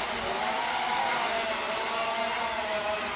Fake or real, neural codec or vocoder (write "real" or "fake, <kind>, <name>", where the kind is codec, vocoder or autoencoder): real